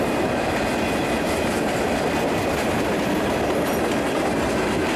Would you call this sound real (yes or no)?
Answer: yes